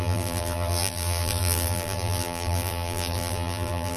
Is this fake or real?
fake